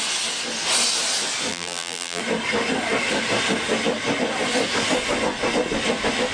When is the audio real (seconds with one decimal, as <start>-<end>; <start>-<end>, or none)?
0.0-1.5; 2.2-6.3